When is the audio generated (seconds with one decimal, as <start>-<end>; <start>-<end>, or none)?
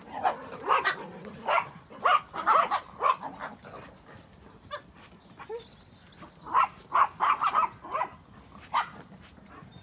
none